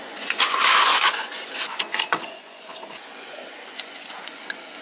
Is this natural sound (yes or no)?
no